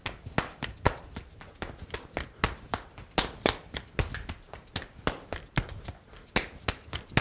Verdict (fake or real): real